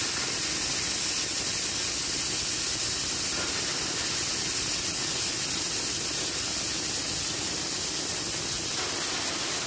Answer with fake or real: real